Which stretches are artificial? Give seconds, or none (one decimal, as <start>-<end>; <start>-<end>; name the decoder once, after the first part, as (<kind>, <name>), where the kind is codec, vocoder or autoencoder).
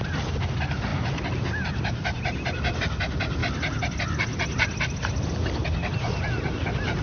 none